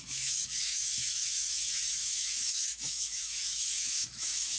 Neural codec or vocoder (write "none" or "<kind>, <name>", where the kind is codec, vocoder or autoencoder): autoencoder, DAC-VAE